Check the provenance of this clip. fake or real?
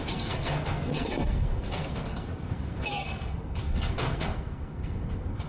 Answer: fake